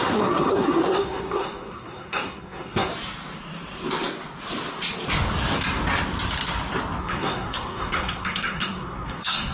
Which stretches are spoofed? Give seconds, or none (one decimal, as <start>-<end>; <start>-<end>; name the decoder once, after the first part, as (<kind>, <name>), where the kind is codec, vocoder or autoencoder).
0.0-2.9 (codec, SNAC); 7.0-9.5